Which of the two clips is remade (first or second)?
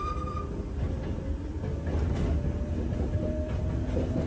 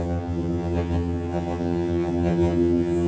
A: second